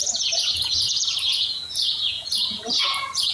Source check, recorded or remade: remade